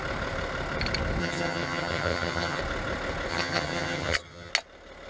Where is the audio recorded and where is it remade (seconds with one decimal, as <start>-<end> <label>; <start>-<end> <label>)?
0.0-1.2 recorded; 1.2-2.6 remade; 2.6-3.3 recorded; 3.3-4.5 remade; 4.5-5.1 recorded